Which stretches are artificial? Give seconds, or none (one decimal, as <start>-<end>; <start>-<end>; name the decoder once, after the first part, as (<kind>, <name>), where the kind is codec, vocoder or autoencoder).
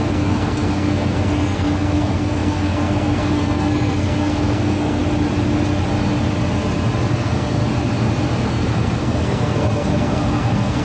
0.0-5.0 (codec, SNAC); 7.1-7.6; 8.5-10.8